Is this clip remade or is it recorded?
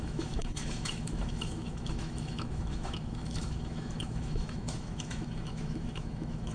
remade